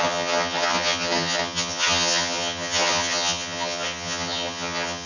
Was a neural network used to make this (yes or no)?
yes